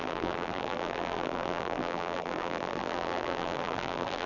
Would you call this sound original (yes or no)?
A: no